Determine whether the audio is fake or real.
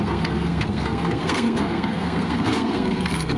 fake